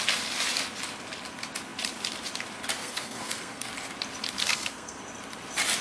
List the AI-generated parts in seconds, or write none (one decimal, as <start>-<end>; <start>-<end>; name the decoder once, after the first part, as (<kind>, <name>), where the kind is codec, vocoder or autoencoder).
2.8-3.7 (codec, SNAC); 4.4-5.0